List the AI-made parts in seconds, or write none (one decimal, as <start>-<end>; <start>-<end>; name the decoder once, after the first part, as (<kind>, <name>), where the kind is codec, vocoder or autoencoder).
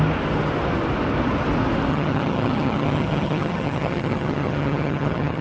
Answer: 1.9-5.4 (vocoder, HiFi-GAN)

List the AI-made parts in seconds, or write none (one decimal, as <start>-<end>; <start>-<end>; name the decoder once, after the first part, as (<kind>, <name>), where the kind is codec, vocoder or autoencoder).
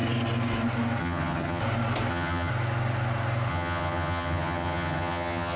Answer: 1.0-1.6 (vocoder, HiFi-GAN); 2.1-2.5; 3.5-5.6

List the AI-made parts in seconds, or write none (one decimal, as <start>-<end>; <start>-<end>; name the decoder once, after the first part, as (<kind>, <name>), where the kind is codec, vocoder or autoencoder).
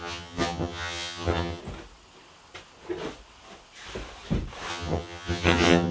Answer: 0.0-1.6 (vocoder, HiFi-GAN); 4.7-5.9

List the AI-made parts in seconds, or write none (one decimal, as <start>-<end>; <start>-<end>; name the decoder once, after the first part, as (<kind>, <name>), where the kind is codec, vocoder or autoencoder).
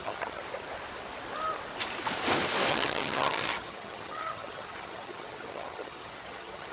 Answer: 0.0-0.4 (vocoder, HiFi-GAN); 2.7-6.7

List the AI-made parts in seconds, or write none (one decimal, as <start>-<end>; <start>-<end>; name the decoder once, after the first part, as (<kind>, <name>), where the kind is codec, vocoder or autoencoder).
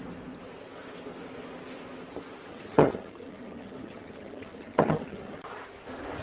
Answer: 2.5-5.4 (vocoder, HiFi-GAN)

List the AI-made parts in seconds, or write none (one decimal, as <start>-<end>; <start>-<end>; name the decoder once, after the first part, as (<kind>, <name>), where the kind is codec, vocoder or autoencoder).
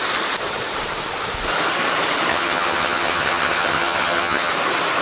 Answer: 2.3-4.5 (vocoder, HiFi-GAN)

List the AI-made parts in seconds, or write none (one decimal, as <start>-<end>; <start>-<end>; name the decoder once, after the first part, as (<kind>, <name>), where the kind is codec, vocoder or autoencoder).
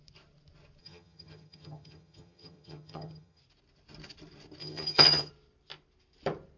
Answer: 0.8-3.4 (vocoder, HiFi-GAN); 4.6-5.3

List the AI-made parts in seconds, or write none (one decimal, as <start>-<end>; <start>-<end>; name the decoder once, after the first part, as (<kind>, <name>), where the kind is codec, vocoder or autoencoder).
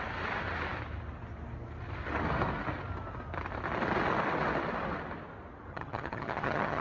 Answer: 5.7-6.8 (vocoder, HiFi-GAN)